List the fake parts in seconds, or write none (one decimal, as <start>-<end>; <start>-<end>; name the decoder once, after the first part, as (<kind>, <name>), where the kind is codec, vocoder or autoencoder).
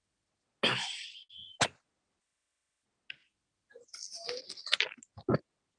none